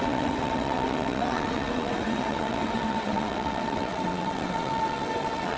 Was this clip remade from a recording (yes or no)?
yes